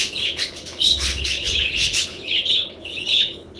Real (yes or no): no